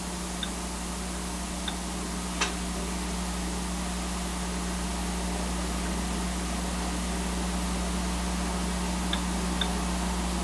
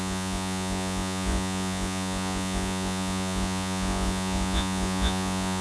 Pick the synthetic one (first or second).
second